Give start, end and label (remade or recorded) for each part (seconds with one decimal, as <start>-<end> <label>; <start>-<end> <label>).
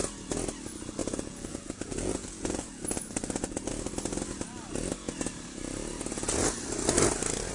0.0-1.0 recorded; 1.0-3.7 remade; 3.7-7.5 recorded